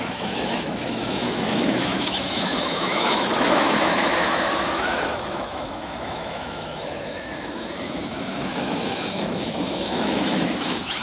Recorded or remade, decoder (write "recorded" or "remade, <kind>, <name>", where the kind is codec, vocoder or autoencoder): remade, autoencoder, DAC-VAE